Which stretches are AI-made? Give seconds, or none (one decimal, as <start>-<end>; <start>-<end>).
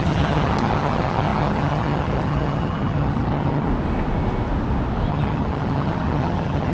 0.0-3.7; 5.1-6.7